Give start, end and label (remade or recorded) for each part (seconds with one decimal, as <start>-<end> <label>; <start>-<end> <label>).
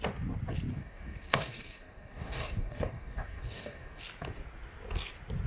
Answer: 0.0-0.7 recorded; 0.7-4.0 remade; 4.0-5.5 recorded